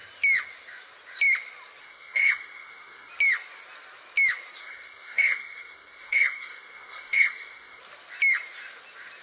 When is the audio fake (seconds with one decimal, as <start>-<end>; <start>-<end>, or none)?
1.8-3.1; 4.6-7.8